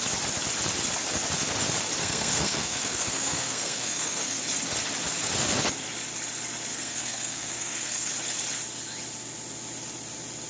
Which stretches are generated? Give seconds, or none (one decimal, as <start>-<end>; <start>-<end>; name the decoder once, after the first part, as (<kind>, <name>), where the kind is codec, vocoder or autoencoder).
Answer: 2.0-4.4 (codec, SNAC); 6.7-8.1